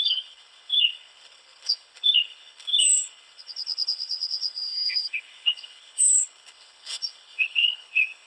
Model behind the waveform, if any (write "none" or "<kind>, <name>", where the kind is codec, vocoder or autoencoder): codec, HILCodec